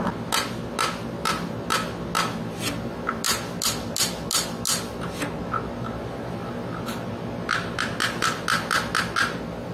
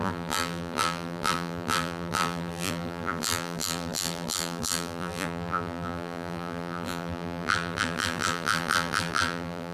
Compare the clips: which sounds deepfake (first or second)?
second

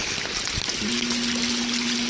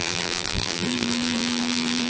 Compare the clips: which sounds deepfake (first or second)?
second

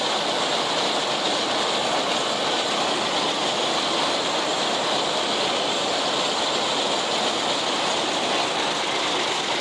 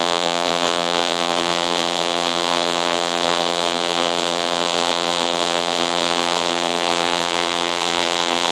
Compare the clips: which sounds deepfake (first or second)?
second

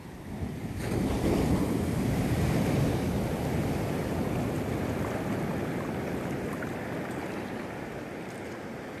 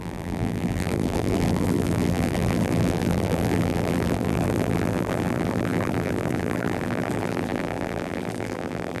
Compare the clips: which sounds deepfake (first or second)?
second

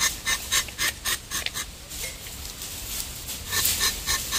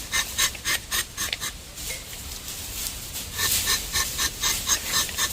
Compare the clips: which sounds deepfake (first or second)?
second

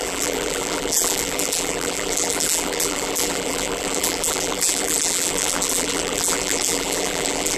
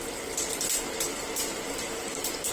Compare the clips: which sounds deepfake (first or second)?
first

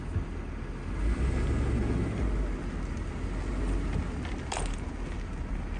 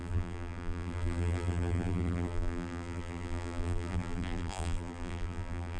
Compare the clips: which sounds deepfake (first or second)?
second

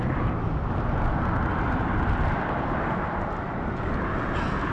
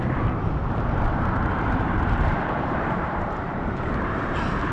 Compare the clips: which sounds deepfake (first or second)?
second